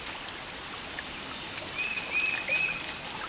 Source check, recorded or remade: recorded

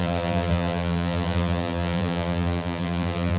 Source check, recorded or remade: remade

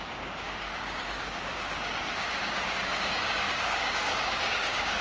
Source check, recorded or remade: remade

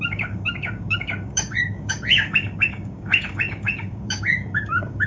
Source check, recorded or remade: remade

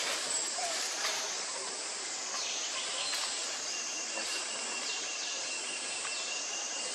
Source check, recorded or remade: recorded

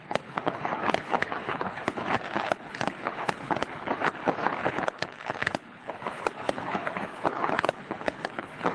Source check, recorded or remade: remade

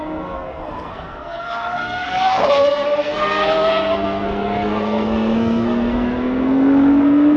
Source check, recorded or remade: remade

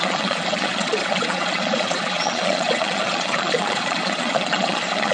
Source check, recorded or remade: remade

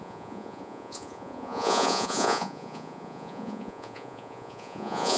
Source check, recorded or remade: remade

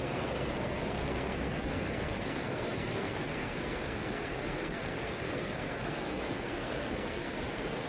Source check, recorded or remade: remade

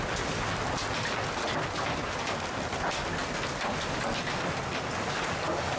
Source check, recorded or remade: recorded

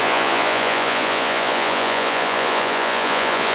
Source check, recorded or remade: remade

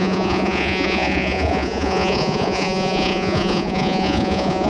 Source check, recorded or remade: remade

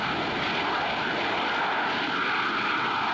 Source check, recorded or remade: recorded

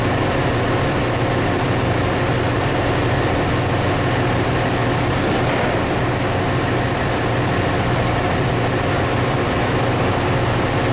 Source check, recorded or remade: recorded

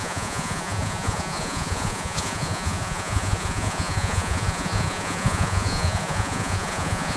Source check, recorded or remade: remade